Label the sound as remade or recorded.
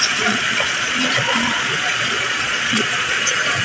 remade